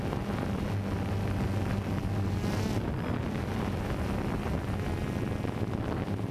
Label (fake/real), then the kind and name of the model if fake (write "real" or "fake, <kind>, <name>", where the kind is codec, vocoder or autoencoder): real